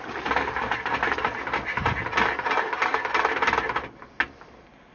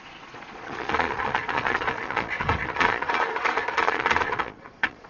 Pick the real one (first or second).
first